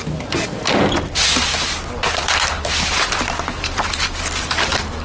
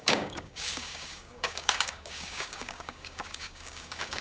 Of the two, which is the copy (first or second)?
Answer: second